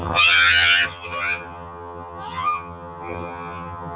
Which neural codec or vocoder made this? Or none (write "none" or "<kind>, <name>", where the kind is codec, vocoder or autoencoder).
vocoder, HiFi-GAN